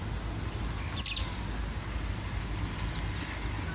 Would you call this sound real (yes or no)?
yes